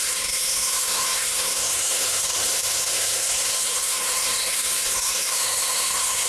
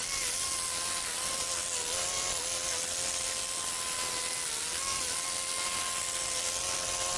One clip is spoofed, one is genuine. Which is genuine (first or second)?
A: second